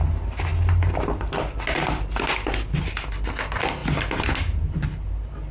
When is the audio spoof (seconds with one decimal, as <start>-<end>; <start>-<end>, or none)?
none